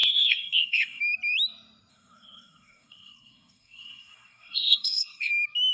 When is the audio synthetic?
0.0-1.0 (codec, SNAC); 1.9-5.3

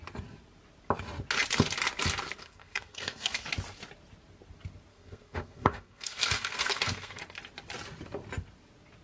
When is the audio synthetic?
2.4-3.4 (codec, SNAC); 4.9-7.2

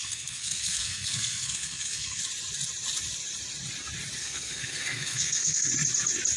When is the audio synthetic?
0.0-2.2 (codec, SNAC); 4.2-5.7